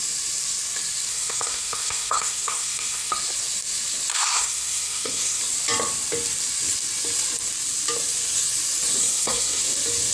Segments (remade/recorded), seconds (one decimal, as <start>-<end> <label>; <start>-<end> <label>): 0.0-1.1 recorded; 1.1-3.1 remade; 3.1-4.1 recorded; 4.1-5.4 remade; 5.4-9.0 recorded; 9.0-9.6 remade; 9.6-10.1 recorded